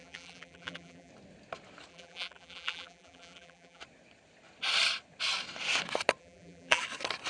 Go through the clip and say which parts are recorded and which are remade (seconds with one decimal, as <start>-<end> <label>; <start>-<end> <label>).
0.0-1.1 remade; 1.1-1.9 recorded; 1.9-3.8 remade; 3.8-6.2 recorded; 6.2-6.8 remade; 6.8-7.3 recorded